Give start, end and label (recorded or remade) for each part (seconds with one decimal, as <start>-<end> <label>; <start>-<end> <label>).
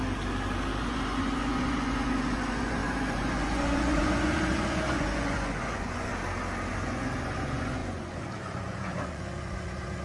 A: 0.0-0.8 recorded; 0.8-6.1 remade; 6.1-6.7 recorded; 6.7-10.0 remade